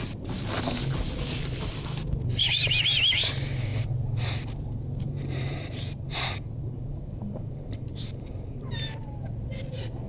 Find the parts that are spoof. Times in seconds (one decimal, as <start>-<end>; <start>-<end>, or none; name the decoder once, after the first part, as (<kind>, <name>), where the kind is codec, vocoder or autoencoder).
3.7-8.5 (vocoder, BigVGAN v2)